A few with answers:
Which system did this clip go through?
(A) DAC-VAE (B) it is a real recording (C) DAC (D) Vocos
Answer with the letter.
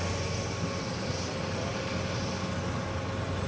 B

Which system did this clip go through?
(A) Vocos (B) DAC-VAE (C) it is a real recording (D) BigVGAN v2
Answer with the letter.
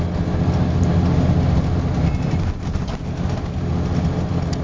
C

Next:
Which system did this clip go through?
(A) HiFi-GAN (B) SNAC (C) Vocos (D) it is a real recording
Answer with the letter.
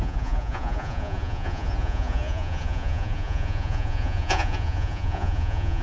C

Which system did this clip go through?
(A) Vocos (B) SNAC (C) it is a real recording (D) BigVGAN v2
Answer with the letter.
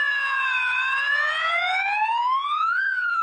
A